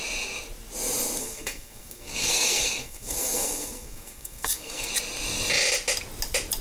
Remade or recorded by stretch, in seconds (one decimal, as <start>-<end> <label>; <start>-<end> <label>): 0.0-1.2 recorded; 1.2-4.9 remade; 4.9-6.6 recorded